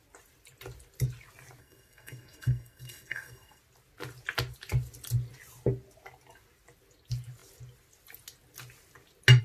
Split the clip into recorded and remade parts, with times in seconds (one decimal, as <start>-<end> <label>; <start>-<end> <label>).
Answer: 0.0-1.6 recorded; 1.6-3.6 remade; 3.6-9.4 recorded